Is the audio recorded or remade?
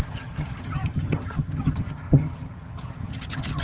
remade